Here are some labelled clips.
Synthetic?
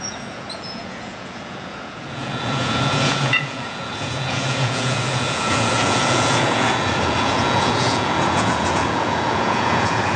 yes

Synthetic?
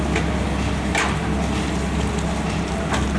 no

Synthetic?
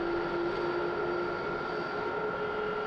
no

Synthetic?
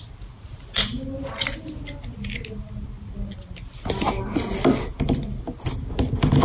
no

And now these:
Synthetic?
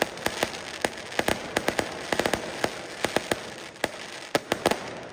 no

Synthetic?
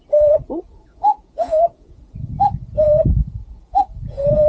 yes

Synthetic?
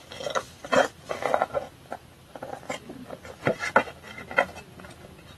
no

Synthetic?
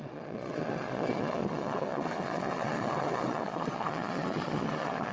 yes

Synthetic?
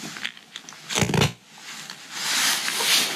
no